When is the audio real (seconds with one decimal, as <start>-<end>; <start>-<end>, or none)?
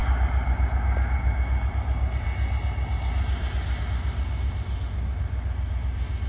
0.0-6.3